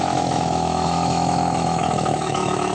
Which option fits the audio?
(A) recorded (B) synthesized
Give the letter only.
B